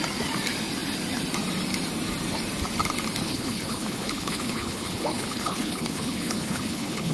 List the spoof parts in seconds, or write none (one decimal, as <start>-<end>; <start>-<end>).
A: 3.2-7.1